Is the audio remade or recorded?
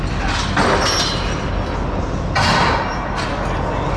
recorded